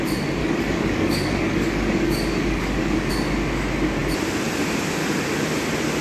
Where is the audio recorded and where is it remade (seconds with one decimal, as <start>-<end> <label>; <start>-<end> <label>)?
0.0-0.4 recorded; 0.4-3.1 remade; 3.1-6.0 recorded